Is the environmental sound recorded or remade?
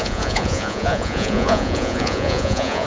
remade